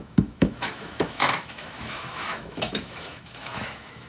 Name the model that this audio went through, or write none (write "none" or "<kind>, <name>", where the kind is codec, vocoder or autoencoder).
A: autoencoder, DAC-VAE